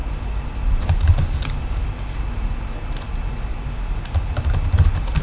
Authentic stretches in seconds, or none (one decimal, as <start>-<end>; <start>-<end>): 2.2-3.5; 4.4-5.2